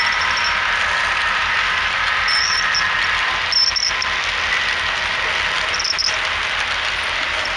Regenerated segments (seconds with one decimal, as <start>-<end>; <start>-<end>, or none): none